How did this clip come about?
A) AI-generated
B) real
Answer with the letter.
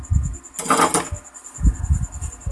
B